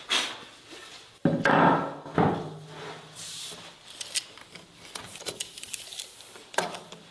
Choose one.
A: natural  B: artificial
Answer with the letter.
B